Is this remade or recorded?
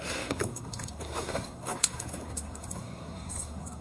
remade